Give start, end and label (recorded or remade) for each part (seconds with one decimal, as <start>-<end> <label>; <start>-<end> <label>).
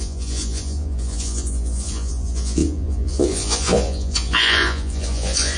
0.0-5.6 remade